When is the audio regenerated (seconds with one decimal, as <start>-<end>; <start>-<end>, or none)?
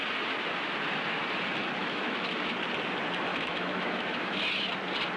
1.8-2.5; 3.3-4.4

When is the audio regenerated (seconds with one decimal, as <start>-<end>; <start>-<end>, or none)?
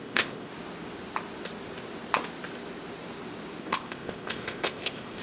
0.0-0.5; 3.6-5.2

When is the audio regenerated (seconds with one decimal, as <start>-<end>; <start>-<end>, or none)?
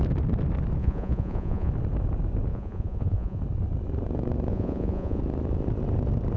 0.8-1.7; 2.5-3.4; 4.5-5.2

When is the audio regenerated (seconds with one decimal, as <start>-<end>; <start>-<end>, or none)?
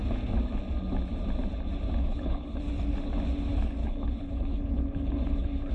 2.0-2.6; 3.8-5.7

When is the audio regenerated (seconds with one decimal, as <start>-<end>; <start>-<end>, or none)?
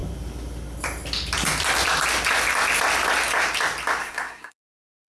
4.0-5.1